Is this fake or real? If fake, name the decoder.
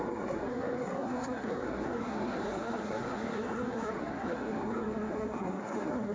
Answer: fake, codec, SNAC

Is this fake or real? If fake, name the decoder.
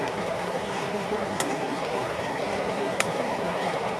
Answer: fake, codec, SNAC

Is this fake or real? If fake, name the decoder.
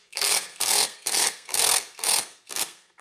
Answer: fake, codec, SNAC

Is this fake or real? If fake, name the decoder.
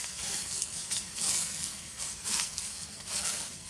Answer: fake, codec, SNAC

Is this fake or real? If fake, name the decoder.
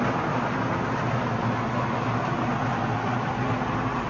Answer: real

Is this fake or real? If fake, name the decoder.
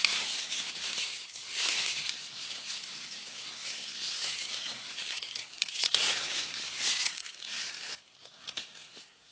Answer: fake, codec, SNAC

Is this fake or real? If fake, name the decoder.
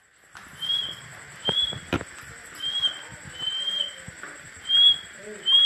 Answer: real